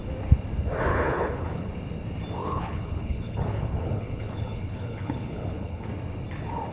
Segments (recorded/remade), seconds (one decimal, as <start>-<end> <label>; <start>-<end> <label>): 0.0-0.9 recorded; 0.9-1.7 remade; 1.7-2.4 recorded; 2.4-5.9 remade; 5.9-6.7 recorded